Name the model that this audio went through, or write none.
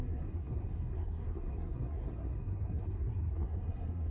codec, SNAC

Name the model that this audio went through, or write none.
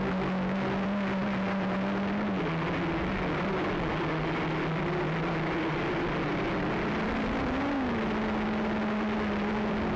none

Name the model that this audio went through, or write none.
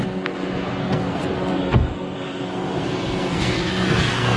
codec, SNAC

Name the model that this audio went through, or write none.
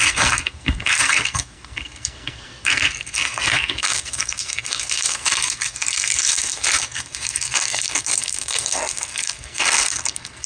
codec, SNAC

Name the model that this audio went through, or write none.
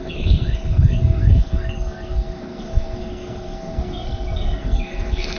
codec, SNAC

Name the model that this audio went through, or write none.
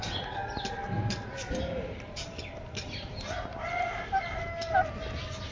none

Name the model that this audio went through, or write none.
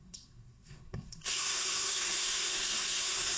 codec, SNAC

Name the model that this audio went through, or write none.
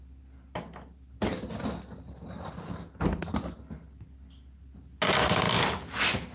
none